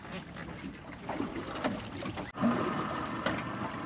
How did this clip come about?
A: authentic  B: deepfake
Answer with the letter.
A